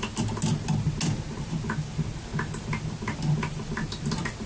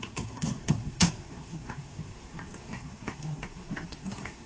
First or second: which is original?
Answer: first